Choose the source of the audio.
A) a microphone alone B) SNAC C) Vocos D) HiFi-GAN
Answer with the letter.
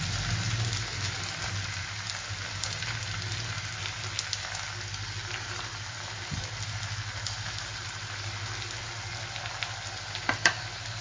A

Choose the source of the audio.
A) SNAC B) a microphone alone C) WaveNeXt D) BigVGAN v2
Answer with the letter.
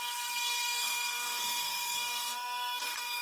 A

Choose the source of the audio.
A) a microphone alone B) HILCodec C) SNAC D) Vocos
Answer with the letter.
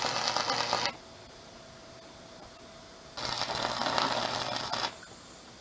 A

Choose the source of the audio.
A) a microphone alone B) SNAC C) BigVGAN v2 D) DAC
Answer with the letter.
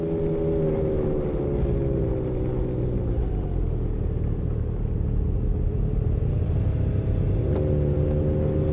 A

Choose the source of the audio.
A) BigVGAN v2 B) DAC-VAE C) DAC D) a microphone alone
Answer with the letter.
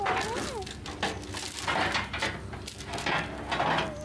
D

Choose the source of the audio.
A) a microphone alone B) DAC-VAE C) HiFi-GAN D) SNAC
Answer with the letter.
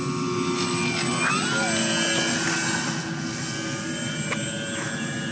A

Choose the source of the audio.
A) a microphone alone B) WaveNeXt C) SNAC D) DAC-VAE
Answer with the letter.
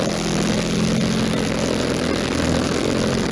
A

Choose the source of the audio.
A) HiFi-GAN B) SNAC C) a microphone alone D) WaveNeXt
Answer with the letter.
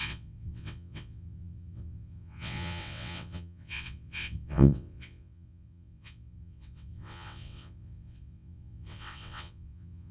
D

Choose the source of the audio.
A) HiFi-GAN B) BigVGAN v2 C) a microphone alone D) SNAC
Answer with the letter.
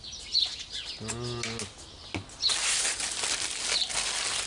C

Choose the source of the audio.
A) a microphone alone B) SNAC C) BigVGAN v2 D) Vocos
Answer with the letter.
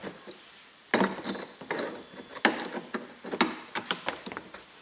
A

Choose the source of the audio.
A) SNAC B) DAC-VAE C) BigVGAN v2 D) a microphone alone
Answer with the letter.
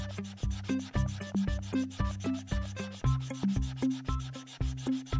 D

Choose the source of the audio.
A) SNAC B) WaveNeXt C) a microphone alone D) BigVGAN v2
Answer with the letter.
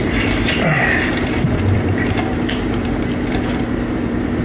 D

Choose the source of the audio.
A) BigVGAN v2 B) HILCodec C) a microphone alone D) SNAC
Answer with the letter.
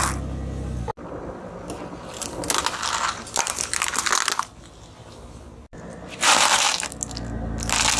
C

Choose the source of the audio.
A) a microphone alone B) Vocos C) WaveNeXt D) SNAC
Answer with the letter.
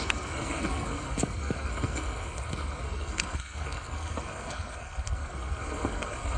D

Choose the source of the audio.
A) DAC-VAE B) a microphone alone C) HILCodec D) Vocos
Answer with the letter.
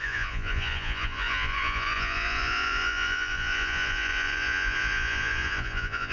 D